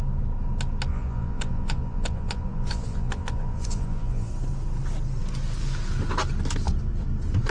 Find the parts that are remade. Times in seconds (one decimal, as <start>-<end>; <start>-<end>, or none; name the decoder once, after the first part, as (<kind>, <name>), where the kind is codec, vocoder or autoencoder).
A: 0.9-4.3 (vocoder, Vocos)